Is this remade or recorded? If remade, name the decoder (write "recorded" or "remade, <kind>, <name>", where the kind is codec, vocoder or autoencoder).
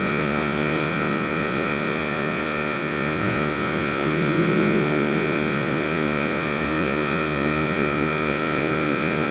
remade, vocoder, Vocos